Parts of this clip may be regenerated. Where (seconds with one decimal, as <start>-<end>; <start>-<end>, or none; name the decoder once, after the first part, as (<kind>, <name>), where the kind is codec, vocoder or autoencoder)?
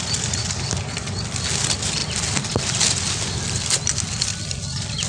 none